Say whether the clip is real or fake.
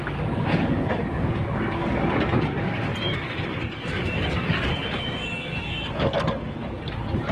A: fake